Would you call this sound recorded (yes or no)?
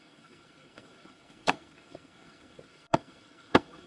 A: no